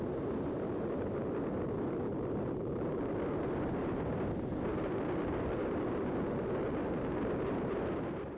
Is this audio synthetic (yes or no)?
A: yes